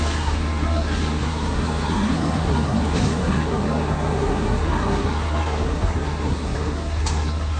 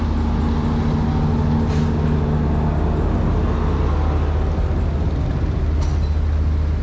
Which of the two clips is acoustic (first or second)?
second